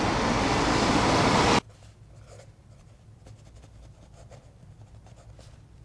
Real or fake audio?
real